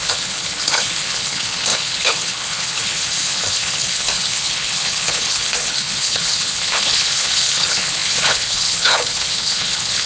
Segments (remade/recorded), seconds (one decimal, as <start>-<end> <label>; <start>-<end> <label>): 0.0-10.1 remade